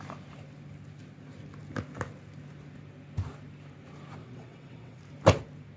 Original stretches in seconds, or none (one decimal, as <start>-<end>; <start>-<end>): 0.0-4.2; 5.0-5.8